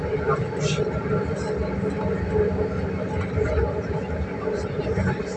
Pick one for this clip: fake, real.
real